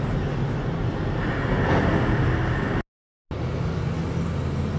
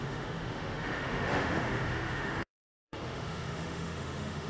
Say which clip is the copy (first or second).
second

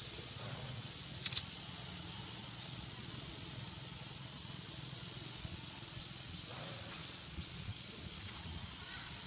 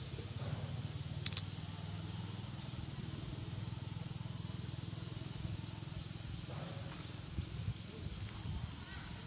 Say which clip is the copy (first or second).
first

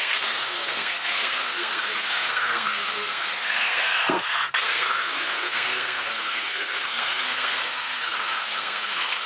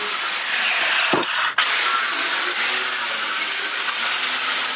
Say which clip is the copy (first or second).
first